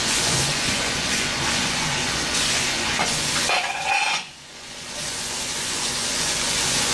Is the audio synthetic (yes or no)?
yes